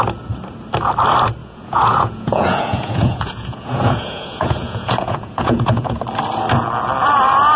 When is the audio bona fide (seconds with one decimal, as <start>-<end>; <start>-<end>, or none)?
0.0-1.4; 6.0-7.6